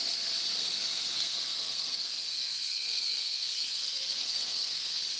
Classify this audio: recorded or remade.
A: remade